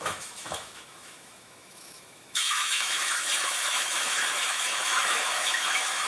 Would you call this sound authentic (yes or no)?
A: no